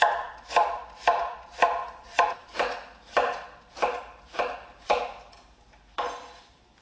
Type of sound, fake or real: real